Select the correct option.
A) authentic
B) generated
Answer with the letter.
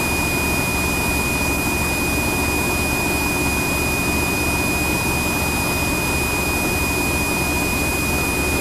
A